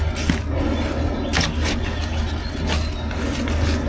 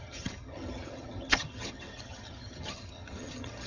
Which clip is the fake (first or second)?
second